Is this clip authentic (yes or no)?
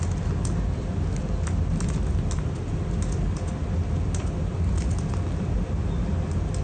yes